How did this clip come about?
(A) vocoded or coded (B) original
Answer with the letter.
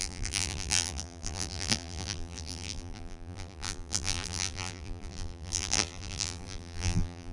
A